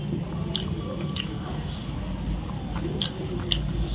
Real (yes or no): yes